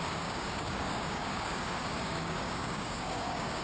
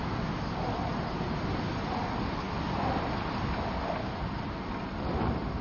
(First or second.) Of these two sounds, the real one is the second